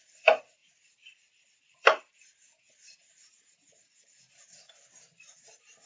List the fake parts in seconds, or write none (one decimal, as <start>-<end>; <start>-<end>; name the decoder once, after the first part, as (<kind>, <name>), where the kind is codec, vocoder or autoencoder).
none